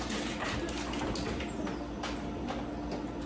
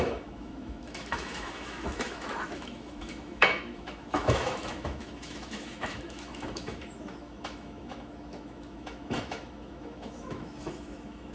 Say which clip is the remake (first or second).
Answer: second